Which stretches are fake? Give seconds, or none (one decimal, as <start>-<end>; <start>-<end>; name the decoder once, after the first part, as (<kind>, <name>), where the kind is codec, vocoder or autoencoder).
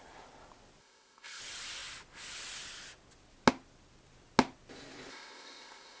0.8-1.4 (codec, ZipCodec); 5.1-6.0